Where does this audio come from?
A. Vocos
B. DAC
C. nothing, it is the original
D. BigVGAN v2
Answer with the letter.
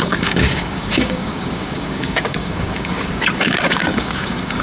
B